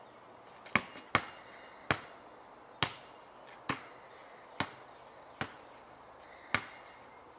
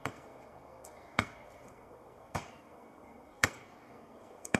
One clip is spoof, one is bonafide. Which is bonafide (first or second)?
first